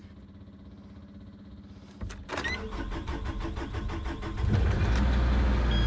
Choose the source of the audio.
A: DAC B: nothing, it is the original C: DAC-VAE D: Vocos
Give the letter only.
B